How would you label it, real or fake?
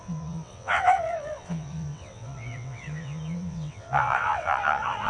fake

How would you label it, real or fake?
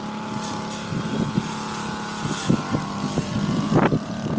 real